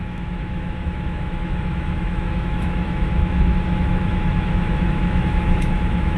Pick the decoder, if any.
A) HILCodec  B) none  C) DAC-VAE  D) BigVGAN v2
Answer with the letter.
C